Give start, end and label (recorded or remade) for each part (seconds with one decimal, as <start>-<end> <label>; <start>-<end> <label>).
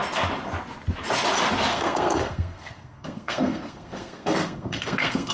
0.0-1.7 recorded; 1.7-5.3 remade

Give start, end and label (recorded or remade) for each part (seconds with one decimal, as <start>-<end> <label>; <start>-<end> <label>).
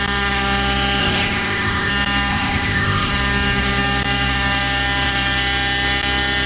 0.0-1.0 recorded; 1.0-1.9 remade; 1.9-2.3 recorded; 2.3-3.1 remade; 3.1-6.5 recorded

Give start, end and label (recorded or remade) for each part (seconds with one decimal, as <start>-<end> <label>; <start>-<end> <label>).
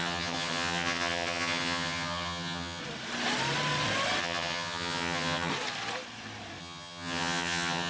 0.0-2.8 remade; 2.8-4.2 recorded; 4.2-5.5 remade; 5.5-6.6 recorded; 6.6-7.9 remade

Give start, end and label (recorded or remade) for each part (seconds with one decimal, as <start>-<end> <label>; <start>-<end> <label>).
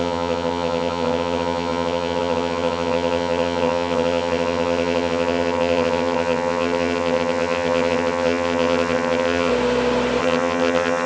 0.0-9.5 remade; 9.5-10.2 recorded; 10.2-11.1 remade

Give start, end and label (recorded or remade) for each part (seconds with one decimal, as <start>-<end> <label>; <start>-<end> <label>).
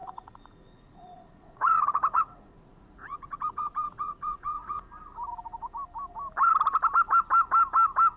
0.0-4.9 remade; 4.9-8.2 recorded